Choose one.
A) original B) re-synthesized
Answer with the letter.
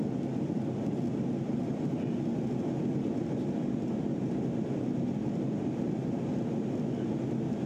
A